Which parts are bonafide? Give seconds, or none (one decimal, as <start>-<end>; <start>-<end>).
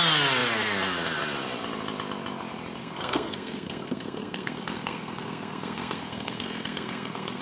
0.0-2.8